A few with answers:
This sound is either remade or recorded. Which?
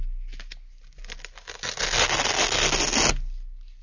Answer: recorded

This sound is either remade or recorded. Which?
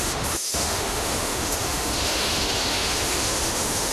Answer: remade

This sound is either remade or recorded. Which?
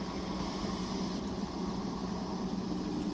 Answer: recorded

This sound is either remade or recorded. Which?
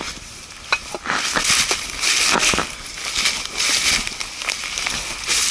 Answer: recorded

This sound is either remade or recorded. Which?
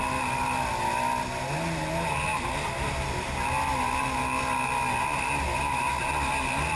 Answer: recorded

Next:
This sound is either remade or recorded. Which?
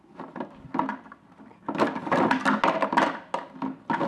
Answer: recorded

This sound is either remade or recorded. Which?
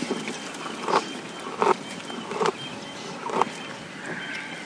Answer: recorded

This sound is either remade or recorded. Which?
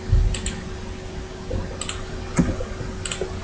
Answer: recorded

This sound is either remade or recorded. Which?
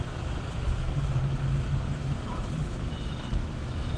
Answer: remade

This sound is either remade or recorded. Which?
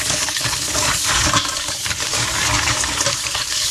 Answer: remade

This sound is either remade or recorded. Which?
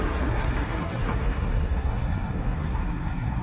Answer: remade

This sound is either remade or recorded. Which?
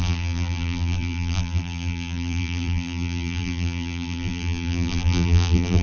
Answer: remade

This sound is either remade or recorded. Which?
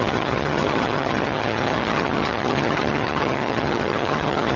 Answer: remade